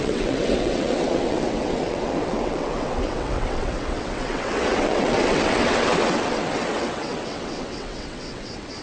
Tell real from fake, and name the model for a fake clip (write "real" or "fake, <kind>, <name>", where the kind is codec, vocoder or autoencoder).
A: fake, vocoder, WaveNeXt